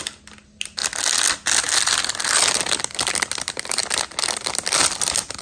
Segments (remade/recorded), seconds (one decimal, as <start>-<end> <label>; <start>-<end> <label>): 0.0-5.4 recorded